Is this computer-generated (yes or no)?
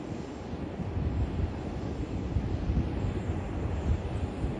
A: no